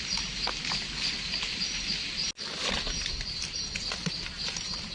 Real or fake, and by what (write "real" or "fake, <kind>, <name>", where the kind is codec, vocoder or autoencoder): real